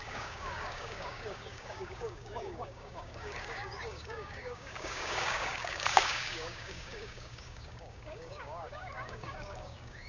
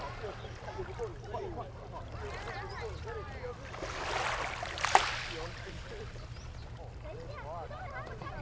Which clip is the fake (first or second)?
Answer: first